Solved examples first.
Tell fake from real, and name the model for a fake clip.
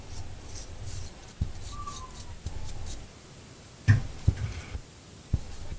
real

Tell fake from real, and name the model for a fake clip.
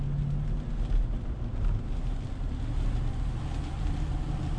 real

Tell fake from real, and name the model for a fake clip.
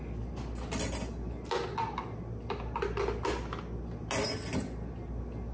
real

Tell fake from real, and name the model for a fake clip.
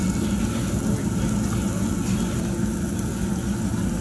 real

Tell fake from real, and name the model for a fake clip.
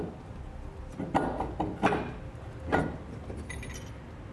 real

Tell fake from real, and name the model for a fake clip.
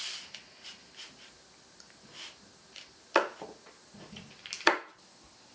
real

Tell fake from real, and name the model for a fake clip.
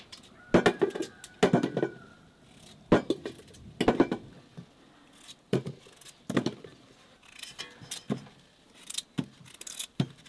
real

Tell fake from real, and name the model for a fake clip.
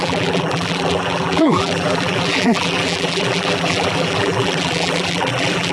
fake, vocoder, BigVGAN v2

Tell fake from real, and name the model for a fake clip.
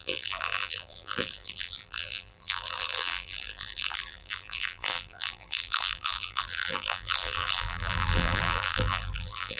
fake, vocoder, BigVGAN v2